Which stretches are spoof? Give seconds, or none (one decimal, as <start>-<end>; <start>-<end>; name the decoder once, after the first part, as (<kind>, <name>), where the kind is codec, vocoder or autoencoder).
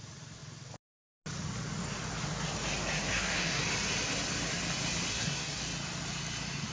3.1-3.6 (codec, SNAC); 5.1-5.6